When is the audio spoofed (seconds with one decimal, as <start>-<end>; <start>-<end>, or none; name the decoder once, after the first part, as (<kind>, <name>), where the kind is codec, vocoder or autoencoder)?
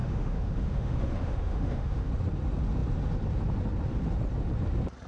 0.0-2.1 (autoencoder, DAC-VAE)